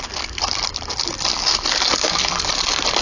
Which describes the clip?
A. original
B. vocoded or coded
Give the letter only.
A